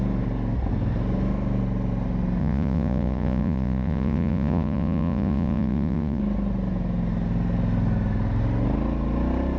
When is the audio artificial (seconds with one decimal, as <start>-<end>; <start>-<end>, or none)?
2.4-6.2